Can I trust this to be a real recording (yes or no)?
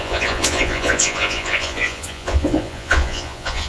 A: no